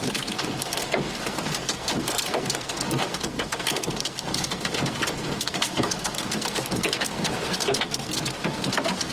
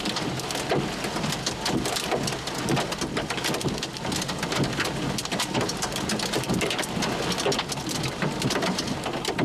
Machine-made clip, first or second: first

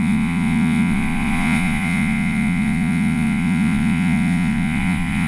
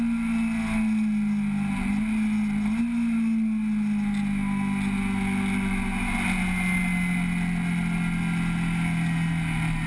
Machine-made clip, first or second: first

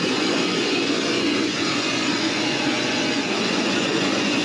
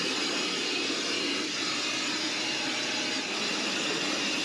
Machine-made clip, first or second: first